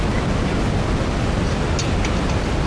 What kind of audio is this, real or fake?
real